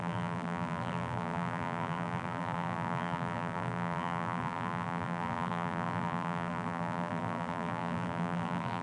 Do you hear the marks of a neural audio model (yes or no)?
yes